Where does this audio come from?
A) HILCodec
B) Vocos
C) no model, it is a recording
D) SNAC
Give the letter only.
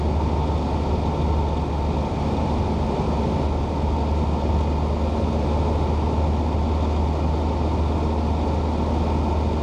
C